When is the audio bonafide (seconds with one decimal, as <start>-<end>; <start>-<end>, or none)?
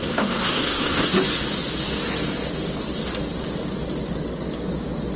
1.2-5.2